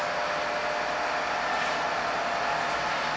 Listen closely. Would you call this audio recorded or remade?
recorded